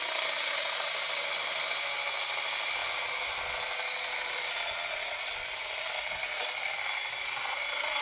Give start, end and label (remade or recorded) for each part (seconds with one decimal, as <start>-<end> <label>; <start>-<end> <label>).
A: 0.0-8.0 recorded